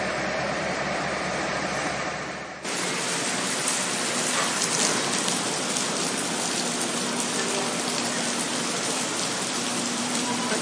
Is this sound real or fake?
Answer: fake